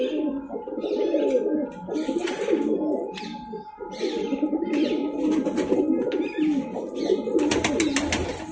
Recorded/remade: recorded